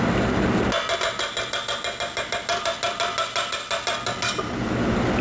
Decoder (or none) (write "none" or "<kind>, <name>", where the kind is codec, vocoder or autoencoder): none